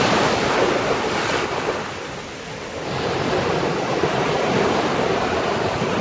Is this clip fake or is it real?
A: real